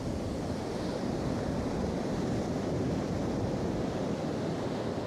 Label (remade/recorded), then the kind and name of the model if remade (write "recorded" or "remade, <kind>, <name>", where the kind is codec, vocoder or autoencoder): recorded